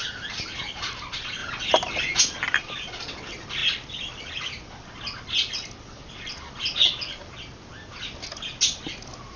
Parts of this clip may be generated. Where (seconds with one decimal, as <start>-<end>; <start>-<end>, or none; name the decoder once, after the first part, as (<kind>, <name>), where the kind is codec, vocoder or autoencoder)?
none

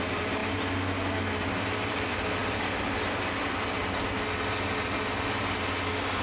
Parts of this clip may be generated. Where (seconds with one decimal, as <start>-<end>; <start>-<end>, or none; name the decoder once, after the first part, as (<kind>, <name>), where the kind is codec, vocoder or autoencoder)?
none

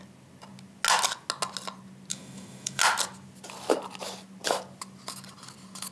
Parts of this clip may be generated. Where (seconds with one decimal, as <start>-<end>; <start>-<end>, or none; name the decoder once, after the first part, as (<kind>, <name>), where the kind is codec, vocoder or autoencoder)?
2.1-2.8 (autoencoder, DAC-VAE)